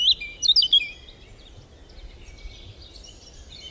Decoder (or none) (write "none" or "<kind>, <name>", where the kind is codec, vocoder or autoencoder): none